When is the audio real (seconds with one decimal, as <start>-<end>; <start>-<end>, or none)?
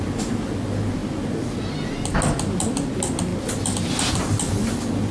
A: 0.0-5.1